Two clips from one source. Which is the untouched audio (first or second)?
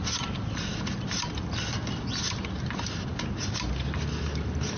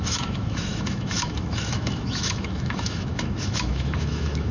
first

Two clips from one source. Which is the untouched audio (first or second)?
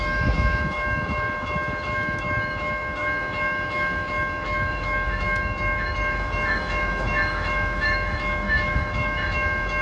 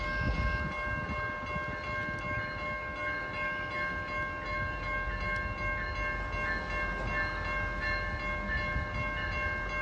second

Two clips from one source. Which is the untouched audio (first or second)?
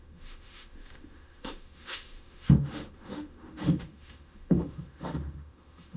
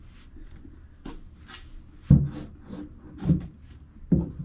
second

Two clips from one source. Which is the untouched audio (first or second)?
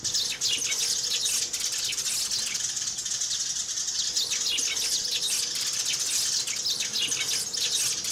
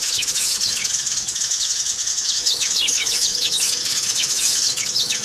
first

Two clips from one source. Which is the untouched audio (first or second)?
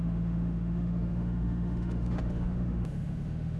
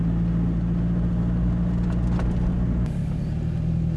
second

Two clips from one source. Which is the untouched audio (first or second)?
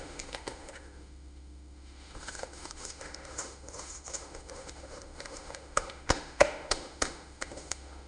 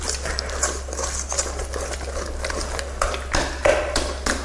second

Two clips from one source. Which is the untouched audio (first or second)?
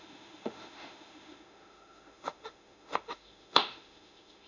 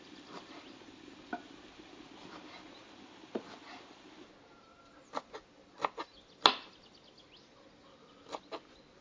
second